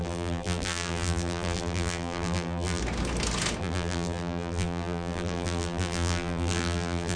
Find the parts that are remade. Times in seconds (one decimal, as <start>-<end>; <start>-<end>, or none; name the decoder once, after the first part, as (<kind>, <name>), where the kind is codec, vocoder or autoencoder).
0.0-2.8 (vocoder, BigVGAN v2); 3.6-7.2